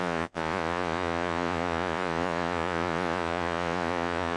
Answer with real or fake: fake